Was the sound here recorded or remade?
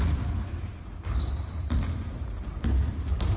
recorded